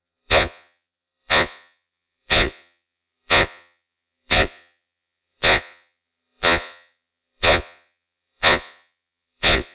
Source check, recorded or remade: remade